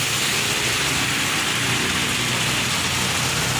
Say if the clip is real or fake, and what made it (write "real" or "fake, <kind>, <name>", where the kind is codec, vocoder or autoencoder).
real